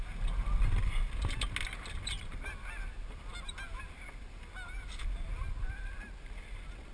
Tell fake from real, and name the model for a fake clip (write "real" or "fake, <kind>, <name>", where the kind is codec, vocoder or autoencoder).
real